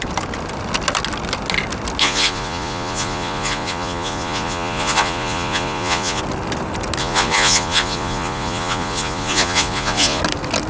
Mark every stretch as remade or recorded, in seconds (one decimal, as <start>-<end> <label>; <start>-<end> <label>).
0.0-2.0 recorded; 2.0-6.2 remade; 6.2-7.0 recorded; 7.0-10.2 remade; 10.2-10.7 recorded